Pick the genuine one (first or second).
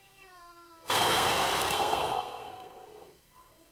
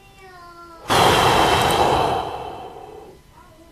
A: second